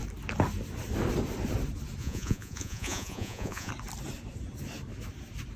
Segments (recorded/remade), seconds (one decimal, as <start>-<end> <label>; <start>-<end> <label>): 0.0-2.0 recorded; 2.0-3.7 remade; 3.7-5.6 recorded